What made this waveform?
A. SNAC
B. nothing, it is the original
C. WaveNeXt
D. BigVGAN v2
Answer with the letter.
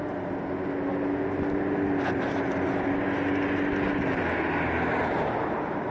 B